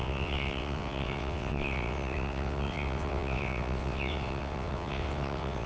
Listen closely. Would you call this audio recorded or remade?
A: remade